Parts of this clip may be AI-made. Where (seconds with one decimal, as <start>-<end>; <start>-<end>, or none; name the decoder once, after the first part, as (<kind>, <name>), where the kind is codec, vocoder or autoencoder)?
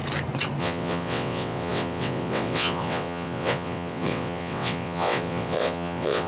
0.6-6.3 (vocoder, WaveNeXt)